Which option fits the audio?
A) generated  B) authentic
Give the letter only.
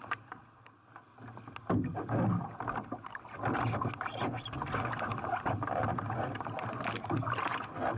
B